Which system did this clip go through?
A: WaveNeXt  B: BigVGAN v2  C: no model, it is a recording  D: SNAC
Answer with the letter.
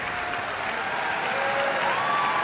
C